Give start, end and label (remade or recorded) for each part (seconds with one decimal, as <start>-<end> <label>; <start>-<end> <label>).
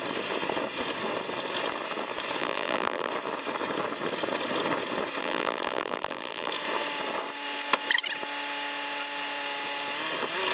0.0-2.4 recorded; 2.4-3.1 remade; 3.1-5.2 recorded; 5.2-6.5 remade; 6.5-10.5 recorded